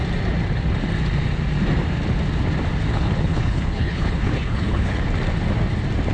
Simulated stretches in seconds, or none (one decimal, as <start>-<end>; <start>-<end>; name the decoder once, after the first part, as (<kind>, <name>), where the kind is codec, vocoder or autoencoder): 2.9-5.0 (codec, HILCodec)